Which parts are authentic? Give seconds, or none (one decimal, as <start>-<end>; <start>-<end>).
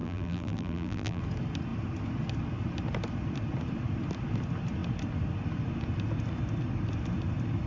1.2-7.7